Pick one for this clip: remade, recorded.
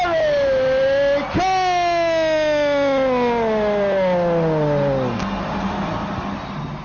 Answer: recorded